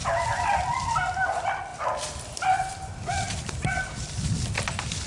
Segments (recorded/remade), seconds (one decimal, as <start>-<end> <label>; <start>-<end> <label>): 0.0-0.6 remade; 0.6-1.7 recorded; 1.7-4.6 remade; 4.6-5.1 recorded